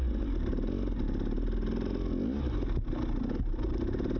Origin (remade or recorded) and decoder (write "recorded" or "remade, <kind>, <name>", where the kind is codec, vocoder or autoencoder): recorded